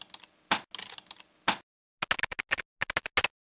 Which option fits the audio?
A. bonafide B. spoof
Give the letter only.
A